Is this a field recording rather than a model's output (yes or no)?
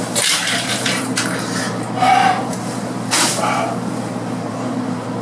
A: no